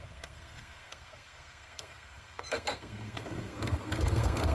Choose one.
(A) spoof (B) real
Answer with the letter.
A